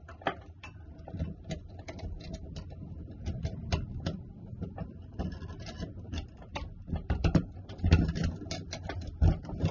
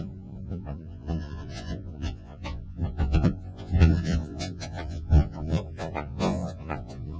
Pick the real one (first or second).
first